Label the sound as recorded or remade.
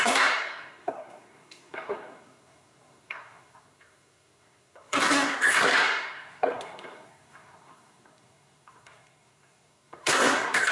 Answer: remade